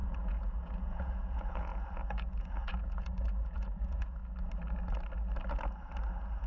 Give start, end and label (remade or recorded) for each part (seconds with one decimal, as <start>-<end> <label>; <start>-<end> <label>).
0.0-4.2 remade; 4.2-6.5 recorded